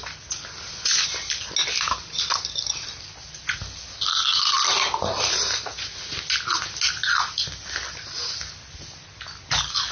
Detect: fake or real real